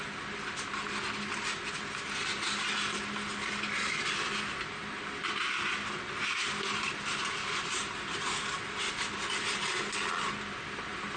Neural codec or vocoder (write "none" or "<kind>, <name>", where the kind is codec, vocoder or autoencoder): none